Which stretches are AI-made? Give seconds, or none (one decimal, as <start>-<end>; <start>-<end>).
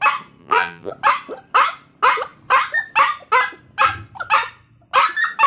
0.4-0.9